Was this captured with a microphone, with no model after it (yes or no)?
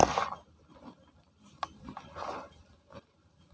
yes